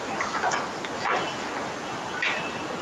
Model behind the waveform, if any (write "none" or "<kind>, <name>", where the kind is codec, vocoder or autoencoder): none